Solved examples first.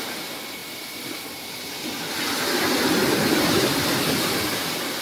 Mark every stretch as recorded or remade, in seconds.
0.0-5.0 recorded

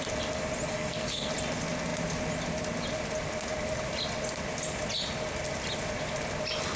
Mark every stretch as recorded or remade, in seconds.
0.0-0.7 recorded; 0.7-1.3 remade; 1.3-6.8 recorded

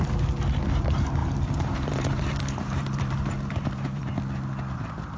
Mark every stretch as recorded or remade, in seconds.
0.0-1.2 recorded; 1.2-4.1 remade; 4.1-5.2 recorded

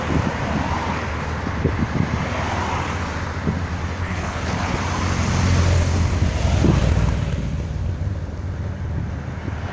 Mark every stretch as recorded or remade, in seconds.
0.0-4.0 recorded; 4.0-4.8 remade; 4.8-9.7 recorded

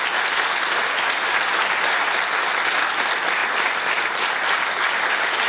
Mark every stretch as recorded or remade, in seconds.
0.0-5.5 recorded

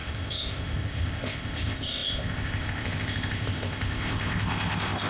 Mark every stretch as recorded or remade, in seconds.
0.0-5.1 remade

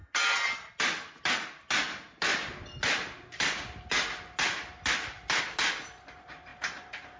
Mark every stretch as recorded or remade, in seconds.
0.0-7.2 recorded

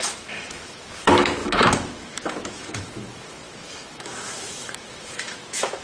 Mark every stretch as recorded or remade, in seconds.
0.0-5.8 remade